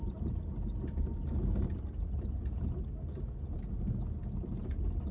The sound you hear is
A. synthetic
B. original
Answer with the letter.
B